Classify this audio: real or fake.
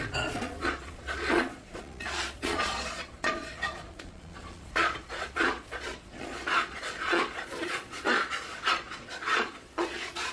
fake